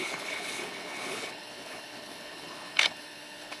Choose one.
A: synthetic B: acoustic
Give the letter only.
A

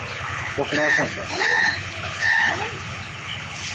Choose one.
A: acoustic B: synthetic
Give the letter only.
B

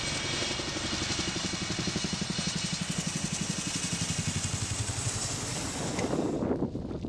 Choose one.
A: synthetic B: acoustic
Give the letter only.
B